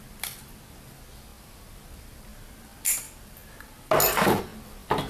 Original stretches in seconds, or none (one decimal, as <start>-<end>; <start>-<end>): 0.0-5.1